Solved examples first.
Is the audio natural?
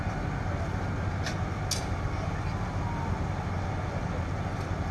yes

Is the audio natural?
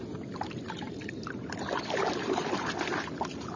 yes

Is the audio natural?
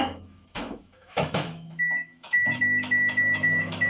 no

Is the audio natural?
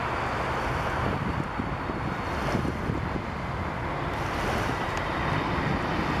yes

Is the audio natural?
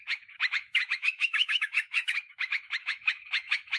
no